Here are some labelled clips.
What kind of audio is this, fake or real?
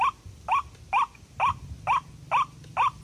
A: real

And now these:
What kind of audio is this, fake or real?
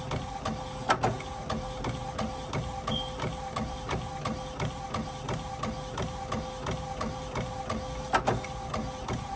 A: real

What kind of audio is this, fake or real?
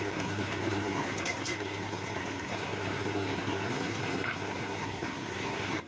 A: fake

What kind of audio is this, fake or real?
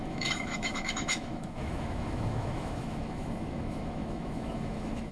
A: fake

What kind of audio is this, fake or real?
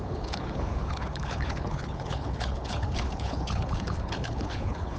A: fake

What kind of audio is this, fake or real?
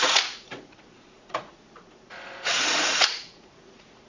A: fake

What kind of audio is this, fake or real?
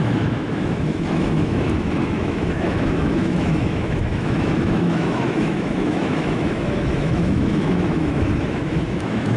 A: fake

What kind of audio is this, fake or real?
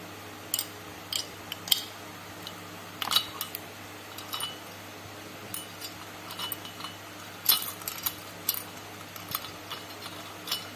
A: real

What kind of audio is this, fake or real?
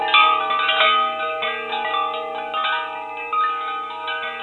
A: real